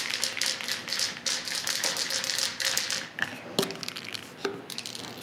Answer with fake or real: real